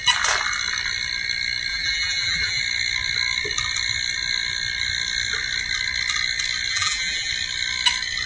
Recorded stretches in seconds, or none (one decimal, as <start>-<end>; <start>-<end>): 0.0-1.7; 2.6-6.7; 7.3-8.3